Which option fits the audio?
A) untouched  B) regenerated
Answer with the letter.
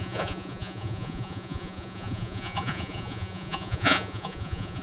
B